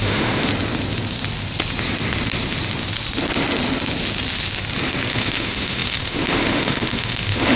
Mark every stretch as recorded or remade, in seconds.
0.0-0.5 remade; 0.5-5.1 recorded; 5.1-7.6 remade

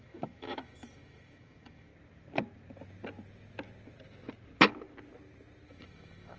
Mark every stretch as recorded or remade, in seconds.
0.0-1.9 remade; 1.9-5.7 recorded; 5.7-6.4 remade

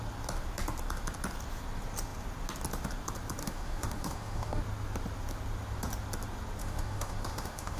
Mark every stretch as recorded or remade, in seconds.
0.0-3.4 recorded; 3.4-4.6 remade; 4.6-6.6 recorded; 6.6-7.8 remade